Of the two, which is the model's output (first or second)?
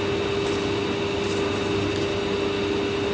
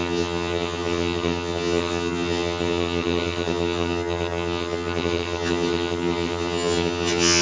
second